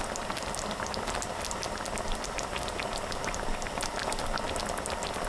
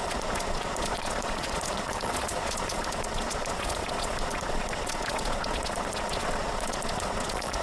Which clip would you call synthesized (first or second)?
second